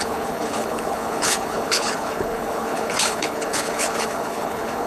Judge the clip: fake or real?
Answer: fake